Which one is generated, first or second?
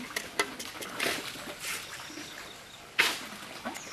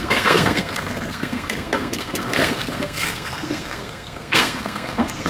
second